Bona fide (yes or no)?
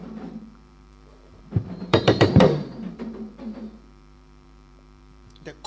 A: no